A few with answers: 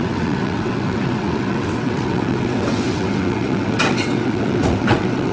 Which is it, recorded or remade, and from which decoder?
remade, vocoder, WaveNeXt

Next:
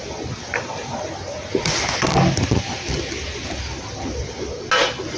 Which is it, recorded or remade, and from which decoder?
recorded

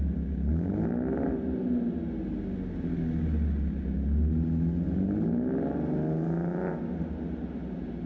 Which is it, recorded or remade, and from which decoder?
recorded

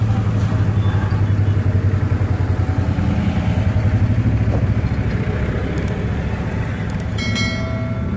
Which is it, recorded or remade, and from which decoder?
recorded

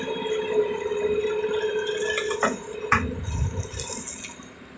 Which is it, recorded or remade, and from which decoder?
recorded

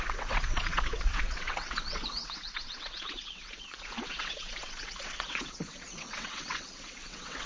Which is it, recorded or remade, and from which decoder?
remade, vocoder, WaveNeXt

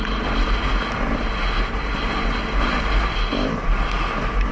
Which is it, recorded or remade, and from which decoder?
recorded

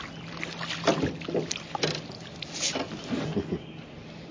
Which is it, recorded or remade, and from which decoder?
recorded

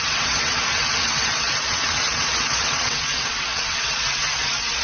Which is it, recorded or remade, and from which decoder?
remade, vocoder, WaveNeXt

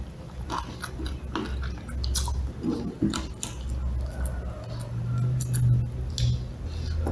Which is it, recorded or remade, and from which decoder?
recorded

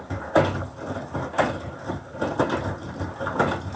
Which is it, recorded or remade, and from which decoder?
recorded